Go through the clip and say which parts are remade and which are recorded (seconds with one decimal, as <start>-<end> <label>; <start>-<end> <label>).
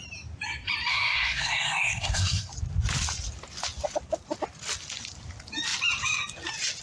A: 0.0-0.9 recorded; 0.9-2.5 remade; 2.5-6.8 recorded